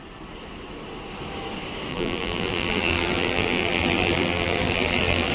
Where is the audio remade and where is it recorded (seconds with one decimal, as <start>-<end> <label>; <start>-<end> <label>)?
0.0-1.9 recorded; 1.9-5.3 remade